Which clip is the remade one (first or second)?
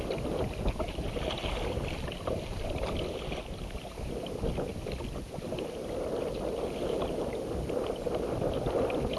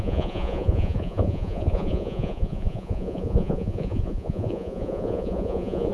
second